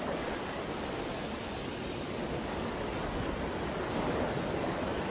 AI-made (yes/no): no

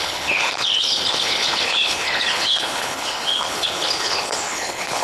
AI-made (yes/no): yes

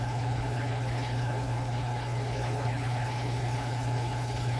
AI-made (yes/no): yes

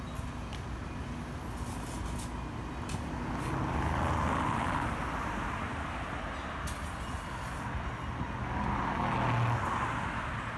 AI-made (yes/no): no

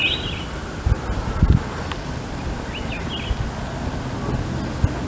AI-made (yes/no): no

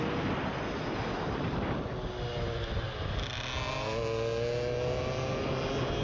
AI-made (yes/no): no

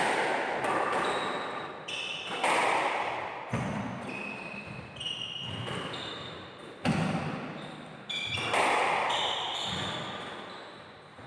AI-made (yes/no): no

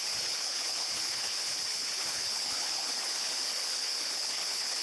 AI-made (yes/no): yes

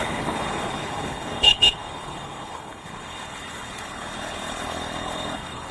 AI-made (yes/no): yes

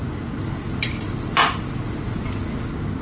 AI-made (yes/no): no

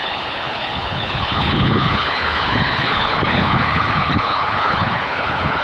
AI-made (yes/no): yes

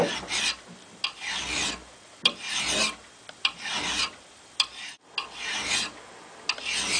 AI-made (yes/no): no